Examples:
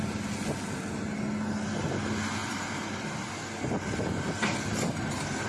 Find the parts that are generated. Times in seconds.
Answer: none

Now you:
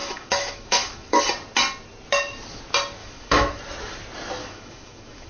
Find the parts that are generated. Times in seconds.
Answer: 0.0-1.2 (autoencoder, DAC-VAE); 3.0-3.6; 4.4-5.3

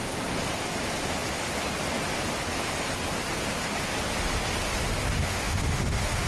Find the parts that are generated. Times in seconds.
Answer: 5.2-6.3 (autoencoder, DAC-VAE)

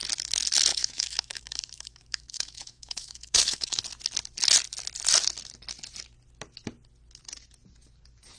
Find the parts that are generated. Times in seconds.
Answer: 0.7-3.8 (autoencoder, DAC-VAE)